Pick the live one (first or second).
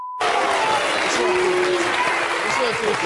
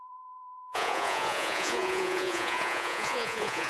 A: first